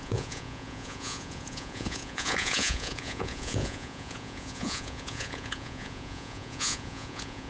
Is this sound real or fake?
fake